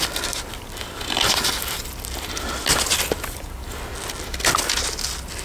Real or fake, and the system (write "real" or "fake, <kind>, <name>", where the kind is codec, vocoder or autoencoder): real